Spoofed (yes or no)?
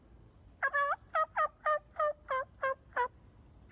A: no